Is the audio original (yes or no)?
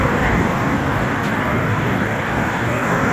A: no